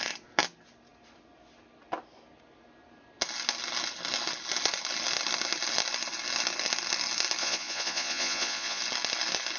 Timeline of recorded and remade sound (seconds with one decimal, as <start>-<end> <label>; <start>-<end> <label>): 0.0-7.4 recorded; 7.4-8.8 remade; 8.8-9.6 recorded